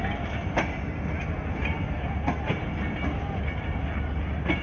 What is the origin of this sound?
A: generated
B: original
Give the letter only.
B